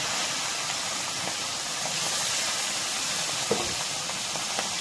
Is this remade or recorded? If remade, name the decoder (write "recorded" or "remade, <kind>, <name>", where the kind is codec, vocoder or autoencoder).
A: recorded